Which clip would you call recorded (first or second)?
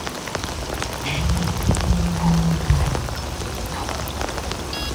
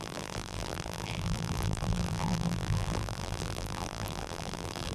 first